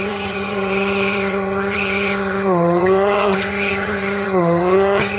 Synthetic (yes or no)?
yes